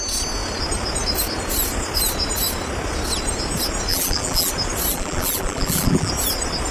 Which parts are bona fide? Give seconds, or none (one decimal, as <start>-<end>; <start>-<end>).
0.0-3.9; 4.5-4.9; 6.1-6.7